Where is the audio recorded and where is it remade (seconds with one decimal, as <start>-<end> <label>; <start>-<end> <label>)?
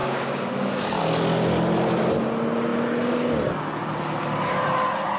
0.0-1.0 remade; 1.0-5.2 recorded